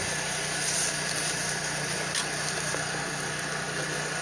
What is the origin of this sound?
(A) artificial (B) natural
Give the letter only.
B